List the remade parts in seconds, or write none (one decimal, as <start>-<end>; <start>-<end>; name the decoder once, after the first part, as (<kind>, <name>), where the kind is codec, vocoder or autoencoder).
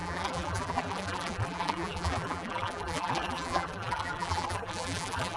0.0-5.4 (vocoder, BigVGAN v2)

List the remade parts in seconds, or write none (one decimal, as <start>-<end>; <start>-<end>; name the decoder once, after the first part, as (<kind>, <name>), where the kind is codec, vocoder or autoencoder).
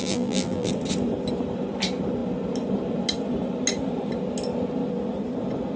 0.0-0.7 (vocoder, BigVGAN v2)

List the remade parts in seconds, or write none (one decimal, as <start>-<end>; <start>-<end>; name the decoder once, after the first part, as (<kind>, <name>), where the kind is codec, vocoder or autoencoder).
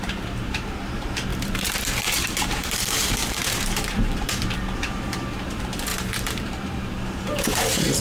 0.0-8.0 (vocoder, BigVGAN v2)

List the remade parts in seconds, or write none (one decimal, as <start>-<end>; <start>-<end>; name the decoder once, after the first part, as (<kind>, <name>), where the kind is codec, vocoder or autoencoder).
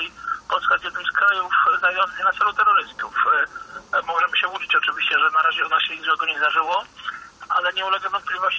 3.0-7.7 (vocoder, BigVGAN v2)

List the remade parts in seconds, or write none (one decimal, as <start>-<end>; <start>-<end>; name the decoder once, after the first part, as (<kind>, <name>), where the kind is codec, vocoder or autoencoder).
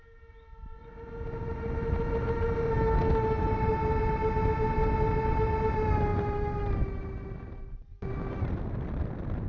3.1-3.7 (vocoder, BigVGAN v2)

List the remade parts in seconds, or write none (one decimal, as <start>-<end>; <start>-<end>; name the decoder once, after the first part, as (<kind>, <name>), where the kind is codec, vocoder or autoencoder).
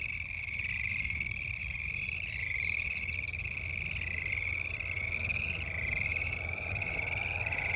6.1-7.0 (vocoder, BigVGAN v2)